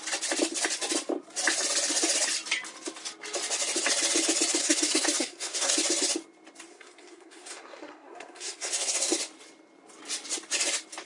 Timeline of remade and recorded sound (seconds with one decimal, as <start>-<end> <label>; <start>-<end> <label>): 0.0-4.6 recorded; 4.6-5.7 remade; 5.7-6.7 recorded; 6.7-9.1 remade; 9.1-11.1 recorded